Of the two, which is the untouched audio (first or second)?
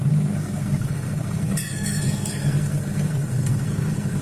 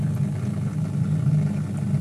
second